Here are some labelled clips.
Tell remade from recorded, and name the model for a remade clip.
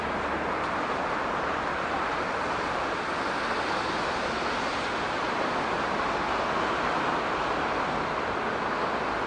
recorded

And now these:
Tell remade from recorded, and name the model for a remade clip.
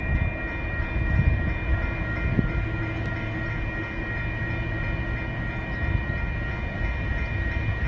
recorded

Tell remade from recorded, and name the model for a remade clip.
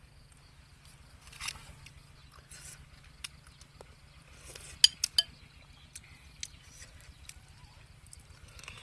recorded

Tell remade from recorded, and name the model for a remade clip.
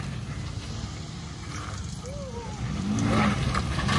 recorded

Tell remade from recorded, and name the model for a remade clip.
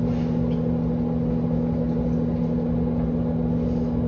recorded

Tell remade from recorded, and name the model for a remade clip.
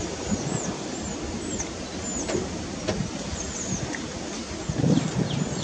recorded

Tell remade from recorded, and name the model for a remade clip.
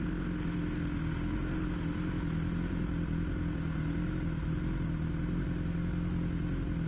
recorded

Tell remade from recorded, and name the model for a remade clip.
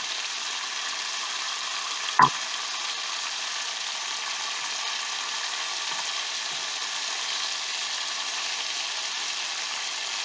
recorded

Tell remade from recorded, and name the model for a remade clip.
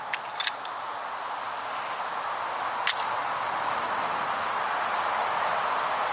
recorded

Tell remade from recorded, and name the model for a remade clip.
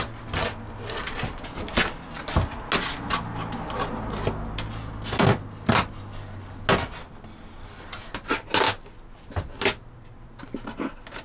recorded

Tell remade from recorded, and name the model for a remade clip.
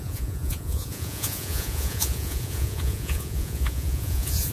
remade, vocoder, Vocos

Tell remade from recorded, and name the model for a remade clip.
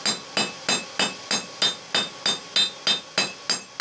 recorded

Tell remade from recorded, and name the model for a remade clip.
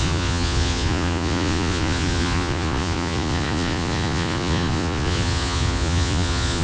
remade, vocoder, Vocos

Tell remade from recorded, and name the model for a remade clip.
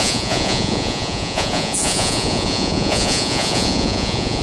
remade, vocoder, Vocos